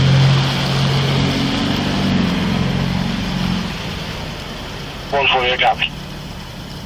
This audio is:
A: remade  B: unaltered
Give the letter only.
B